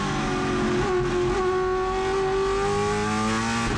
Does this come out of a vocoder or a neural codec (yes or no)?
no